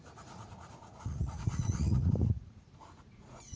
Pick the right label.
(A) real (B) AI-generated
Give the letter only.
B